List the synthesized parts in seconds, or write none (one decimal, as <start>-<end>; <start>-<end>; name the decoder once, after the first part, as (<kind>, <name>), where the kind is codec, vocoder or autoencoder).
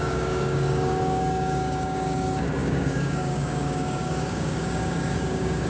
0.0-5.7 (codec, DAC)